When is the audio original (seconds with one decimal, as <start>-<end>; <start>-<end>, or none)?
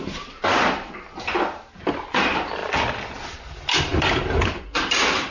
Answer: 0.0-5.3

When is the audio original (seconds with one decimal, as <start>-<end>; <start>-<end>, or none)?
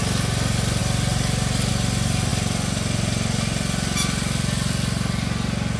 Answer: 0.0-5.8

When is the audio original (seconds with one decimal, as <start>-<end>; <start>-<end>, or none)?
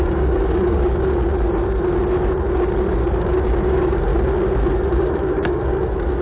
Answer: 1.3-3.2; 4.1-4.9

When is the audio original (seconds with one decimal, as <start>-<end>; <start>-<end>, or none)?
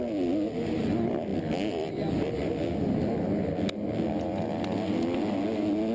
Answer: 0.0-5.9